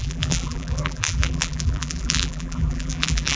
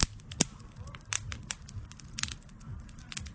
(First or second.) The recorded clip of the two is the second